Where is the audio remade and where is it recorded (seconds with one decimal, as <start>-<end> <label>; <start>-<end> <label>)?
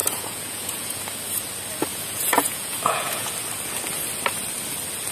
0.0-1.0 remade; 1.0-1.9 recorded; 1.9-3.3 remade; 3.3-5.1 recorded